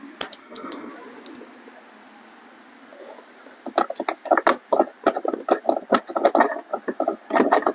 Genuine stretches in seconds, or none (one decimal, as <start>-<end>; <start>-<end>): 0.0-0.4; 0.9-7.7